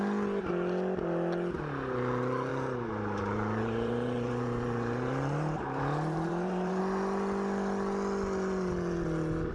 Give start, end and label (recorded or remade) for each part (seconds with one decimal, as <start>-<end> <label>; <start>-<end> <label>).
0.0-2.5 recorded; 2.5-6.8 remade; 6.8-9.5 recorded